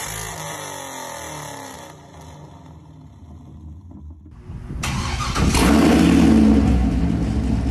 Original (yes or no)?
yes